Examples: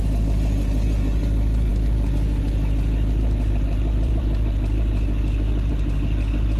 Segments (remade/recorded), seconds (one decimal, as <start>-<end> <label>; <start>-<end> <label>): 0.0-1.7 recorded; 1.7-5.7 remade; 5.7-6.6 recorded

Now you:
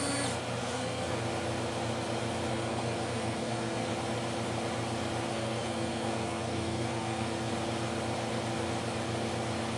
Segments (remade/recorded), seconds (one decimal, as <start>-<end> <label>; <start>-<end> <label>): 0.0-0.6 recorded; 0.6-1.2 remade; 1.2-2.5 recorded; 2.5-3.9 remade; 3.9-5.3 recorded; 5.3-7.5 remade; 7.5-9.8 recorded

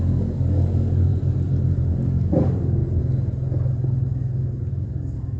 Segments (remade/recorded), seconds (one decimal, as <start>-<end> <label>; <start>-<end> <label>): 0.0-1.1 remade; 1.1-1.8 recorded; 1.8-2.8 remade; 2.8-4.7 recorded; 4.7-5.4 remade